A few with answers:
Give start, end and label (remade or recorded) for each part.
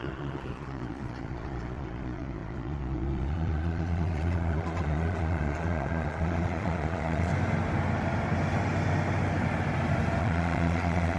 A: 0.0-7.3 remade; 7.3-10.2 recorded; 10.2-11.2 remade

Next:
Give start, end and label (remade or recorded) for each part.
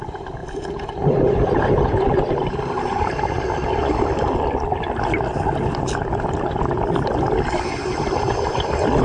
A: 0.0-9.0 recorded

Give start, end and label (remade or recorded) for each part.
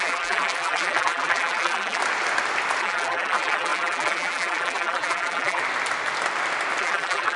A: 0.0-2.0 remade; 2.0-2.8 recorded; 2.8-5.6 remade; 5.6-6.8 recorded; 6.8-7.4 remade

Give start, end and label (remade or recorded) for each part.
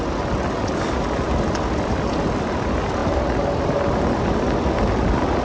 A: 0.0-5.4 recorded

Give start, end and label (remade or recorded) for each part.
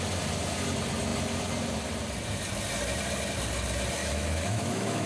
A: 0.0-4.0 recorded; 4.0-5.1 remade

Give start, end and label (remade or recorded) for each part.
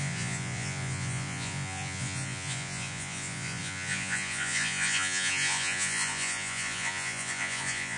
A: 0.0-8.0 remade